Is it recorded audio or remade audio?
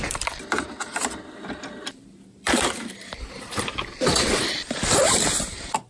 remade